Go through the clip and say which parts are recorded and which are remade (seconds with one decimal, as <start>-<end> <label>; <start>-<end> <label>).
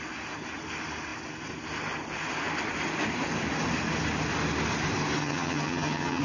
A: 0.0-5.2 recorded; 5.2-6.2 remade